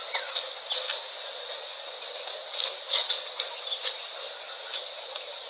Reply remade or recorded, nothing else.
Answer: recorded